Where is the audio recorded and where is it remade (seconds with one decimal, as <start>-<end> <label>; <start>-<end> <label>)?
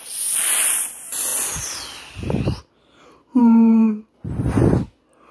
0.0-3.4 recorded; 3.4-4.0 remade; 4.0-5.3 recorded